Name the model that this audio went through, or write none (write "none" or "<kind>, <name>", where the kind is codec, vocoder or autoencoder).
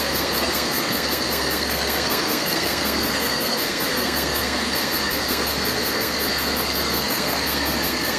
codec, SNAC